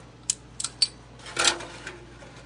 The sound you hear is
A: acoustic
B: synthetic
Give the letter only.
A